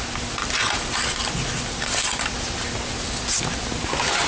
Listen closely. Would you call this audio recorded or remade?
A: recorded